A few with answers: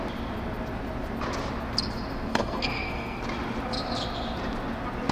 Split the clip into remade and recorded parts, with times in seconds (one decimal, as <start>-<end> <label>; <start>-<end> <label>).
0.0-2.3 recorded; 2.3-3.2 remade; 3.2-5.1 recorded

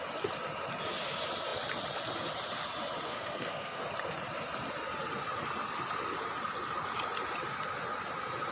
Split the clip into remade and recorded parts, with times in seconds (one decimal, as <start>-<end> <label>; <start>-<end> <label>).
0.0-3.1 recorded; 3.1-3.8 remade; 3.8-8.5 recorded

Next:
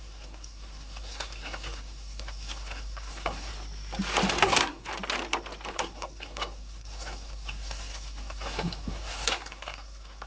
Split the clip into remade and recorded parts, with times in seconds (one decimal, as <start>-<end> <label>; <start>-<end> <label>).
0.0-3.5 remade; 3.5-4.4 recorded; 4.4-4.9 remade; 4.9-5.7 recorded; 5.7-10.3 remade